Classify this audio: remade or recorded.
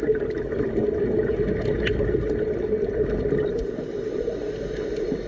recorded